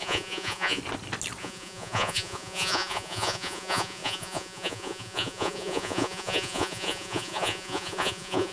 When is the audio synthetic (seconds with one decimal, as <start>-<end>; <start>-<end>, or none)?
0.0-0.8; 1.4-8.5